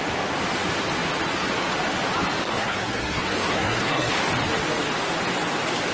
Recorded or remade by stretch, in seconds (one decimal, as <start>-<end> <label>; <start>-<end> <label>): 0.0-2.5 recorded; 2.5-4.1 remade; 4.1-5.9 recorded